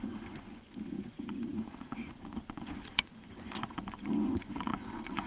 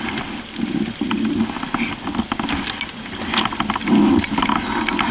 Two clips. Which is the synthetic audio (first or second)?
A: first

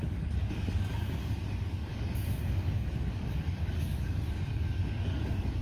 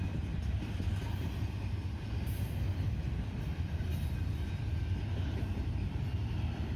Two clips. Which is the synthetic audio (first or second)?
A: first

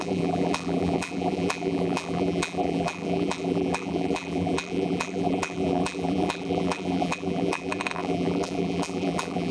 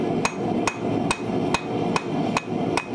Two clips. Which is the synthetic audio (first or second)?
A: first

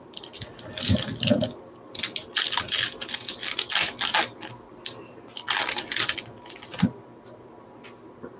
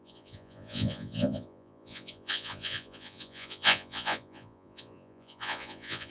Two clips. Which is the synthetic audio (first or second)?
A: second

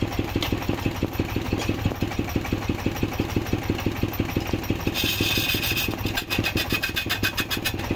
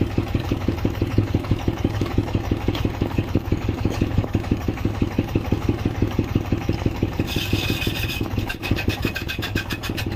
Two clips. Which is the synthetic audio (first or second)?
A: second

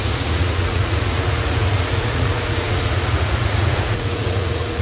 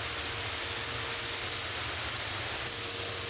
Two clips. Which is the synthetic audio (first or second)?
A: first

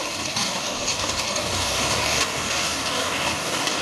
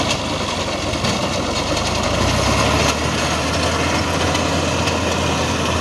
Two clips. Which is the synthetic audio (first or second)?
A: first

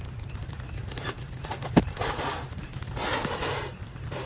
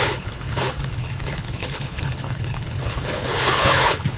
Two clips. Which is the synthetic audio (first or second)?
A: second